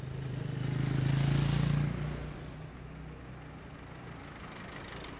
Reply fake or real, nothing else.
real